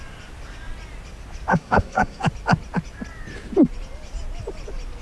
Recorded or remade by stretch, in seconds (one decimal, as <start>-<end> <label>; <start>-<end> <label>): 0.0-1.5 recorded; 1.5-2.2 remade; 2.2-5.0 recorded